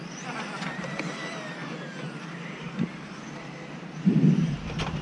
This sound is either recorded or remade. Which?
recorded